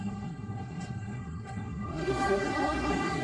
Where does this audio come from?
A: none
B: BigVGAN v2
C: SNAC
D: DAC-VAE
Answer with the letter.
C